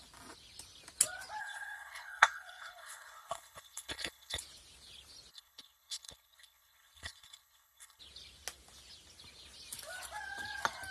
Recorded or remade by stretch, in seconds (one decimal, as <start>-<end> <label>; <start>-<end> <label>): 0.0-1.4 recorded; 1.4-4.4 remade; 4.4-5.3 recorded; 5.3-8.0 remade; 8.0-10.9 recorded